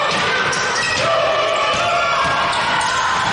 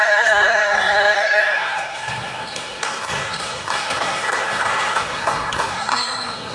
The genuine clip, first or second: first